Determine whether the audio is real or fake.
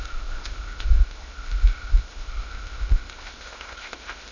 fake